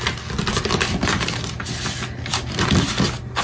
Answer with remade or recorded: recorded